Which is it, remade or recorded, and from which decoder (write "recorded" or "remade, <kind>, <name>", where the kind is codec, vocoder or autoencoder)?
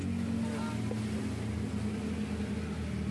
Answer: recorded